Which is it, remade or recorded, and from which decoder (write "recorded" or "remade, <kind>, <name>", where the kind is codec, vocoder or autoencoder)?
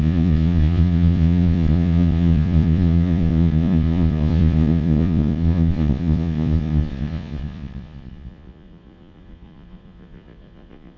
remade, vocoder, Vocos